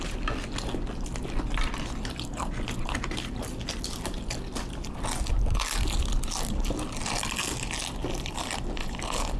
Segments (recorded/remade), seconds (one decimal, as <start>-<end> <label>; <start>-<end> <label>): 0.0-8.0 recorded; 8.0-9.4 remade